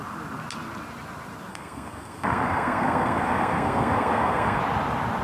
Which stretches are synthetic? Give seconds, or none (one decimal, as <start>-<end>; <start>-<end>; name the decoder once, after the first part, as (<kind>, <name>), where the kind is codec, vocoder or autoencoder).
1.5-4.6 (codec, SNAC)